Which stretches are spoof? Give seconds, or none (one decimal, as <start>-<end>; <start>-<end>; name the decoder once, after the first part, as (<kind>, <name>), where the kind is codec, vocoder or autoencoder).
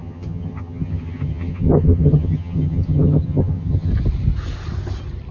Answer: 0.0-3.9 (vocoder, HiFi-GAN)